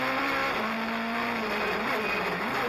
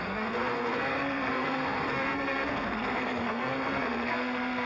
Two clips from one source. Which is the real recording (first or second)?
first